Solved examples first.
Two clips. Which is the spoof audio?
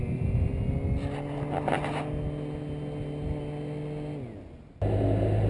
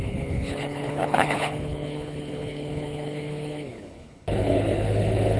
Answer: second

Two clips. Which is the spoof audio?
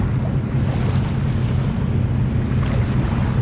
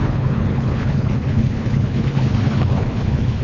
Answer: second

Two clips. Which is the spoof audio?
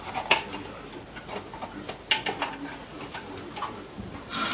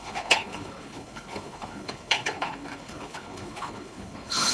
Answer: second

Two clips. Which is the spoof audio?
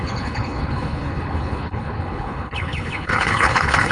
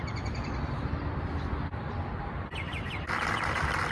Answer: first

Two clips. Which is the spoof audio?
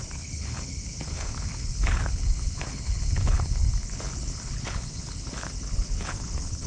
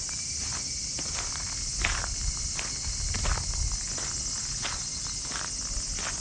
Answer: first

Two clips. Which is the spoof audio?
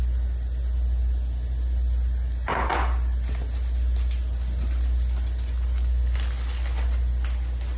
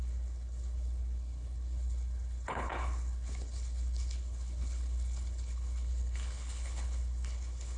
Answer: second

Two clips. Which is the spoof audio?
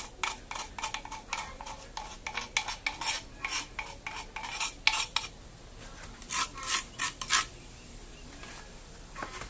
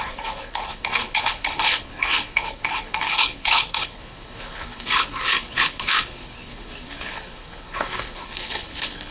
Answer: second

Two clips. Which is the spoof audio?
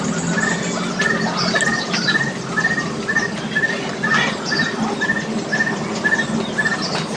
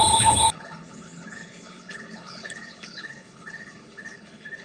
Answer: second